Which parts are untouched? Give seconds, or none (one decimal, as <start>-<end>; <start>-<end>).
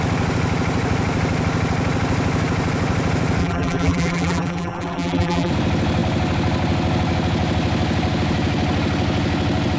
0.0-3.4; 5.5-9.8